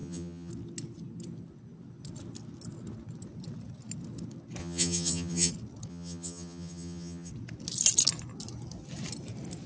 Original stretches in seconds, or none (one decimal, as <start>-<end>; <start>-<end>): 0.5-4.6; 5.5-5.9; 7.3-9.7